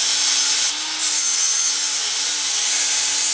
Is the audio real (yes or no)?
yes